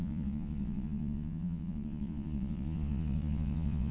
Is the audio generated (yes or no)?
yes